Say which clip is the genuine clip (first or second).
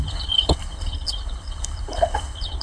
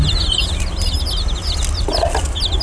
second